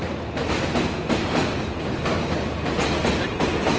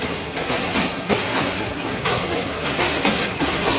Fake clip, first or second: second